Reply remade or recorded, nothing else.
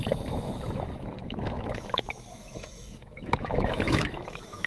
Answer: remade